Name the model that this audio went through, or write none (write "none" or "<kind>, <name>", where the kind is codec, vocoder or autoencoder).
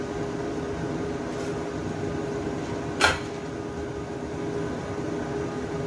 none